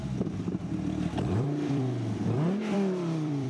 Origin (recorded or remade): remade